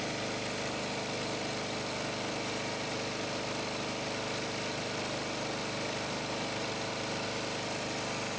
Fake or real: real